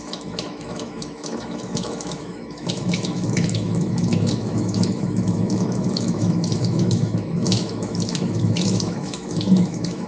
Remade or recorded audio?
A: remade